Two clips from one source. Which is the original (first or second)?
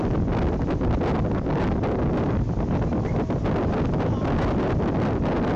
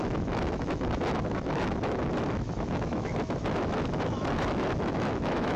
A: first